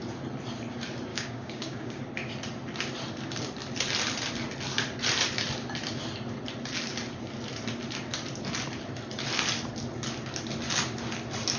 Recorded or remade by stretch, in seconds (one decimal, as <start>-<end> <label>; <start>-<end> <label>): 0.0-1.1 recorded; 1.1-2.0 remade; 2.0-11.6 recorded